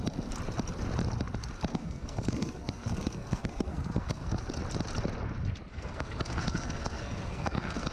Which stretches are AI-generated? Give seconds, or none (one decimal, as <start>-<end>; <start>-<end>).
1.7-4.5; 5.7-7.9